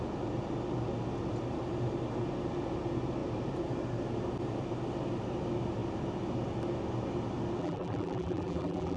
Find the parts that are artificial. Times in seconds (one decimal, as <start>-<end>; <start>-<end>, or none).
7.6-9.0